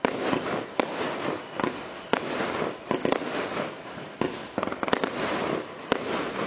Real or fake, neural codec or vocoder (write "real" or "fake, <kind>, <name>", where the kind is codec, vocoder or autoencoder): real